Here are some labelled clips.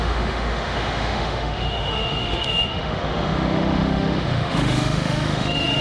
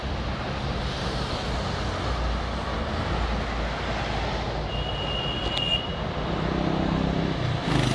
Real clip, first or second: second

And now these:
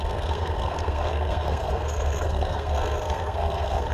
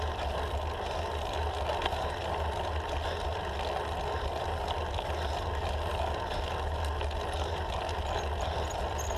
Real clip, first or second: second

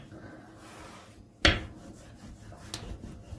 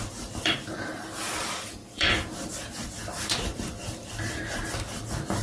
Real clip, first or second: first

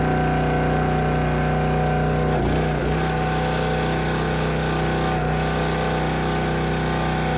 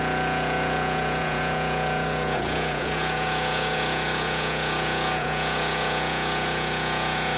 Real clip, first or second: first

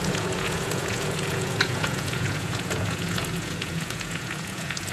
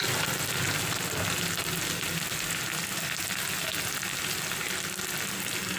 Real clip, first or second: second